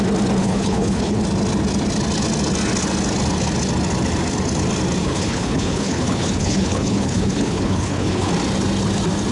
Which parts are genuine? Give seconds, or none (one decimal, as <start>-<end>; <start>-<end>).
0.0-0.4; 1.2-5.0; 8.3-9.3